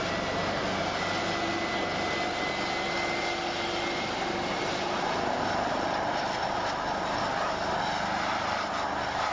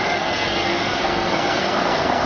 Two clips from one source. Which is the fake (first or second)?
second